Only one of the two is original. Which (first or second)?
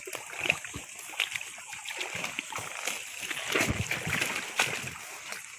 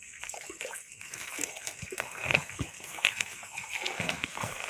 first